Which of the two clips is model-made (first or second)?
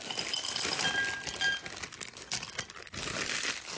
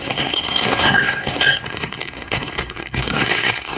second